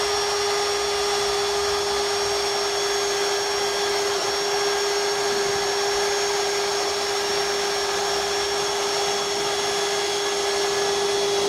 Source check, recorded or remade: recorded